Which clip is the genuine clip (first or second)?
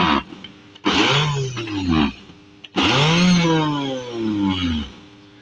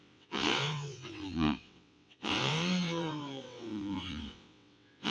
first